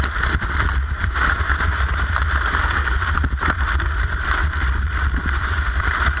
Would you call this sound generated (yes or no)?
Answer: yes